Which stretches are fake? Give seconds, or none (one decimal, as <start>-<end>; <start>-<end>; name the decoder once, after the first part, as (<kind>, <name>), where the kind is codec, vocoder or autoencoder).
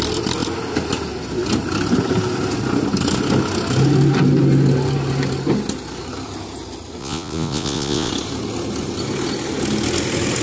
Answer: 7.0-8.1 (vocoder, Vocos)